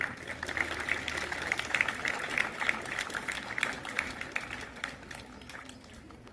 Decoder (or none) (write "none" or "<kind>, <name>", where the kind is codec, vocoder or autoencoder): none